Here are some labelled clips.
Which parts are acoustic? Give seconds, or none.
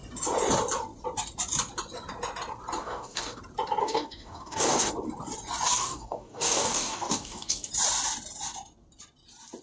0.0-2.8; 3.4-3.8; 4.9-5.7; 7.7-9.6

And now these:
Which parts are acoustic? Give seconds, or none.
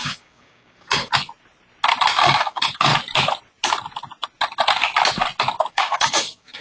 1.1-2.2; 2.9-5.7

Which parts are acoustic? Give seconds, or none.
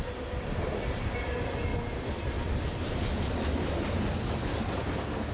0.0-4.5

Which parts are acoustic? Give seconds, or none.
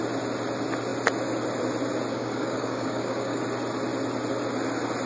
0.0-2.1; 3.4-5.1